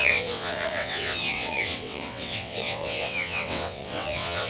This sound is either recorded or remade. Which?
remade